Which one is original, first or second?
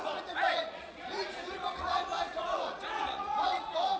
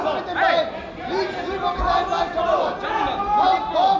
second